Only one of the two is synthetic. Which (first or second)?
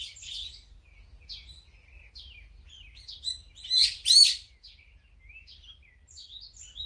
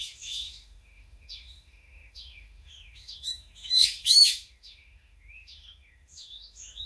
second